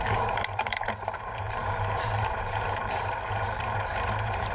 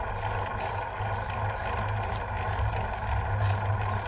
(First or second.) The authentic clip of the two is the second